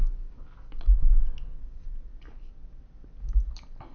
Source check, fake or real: real